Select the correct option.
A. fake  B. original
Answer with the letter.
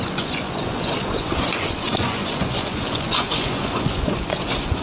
A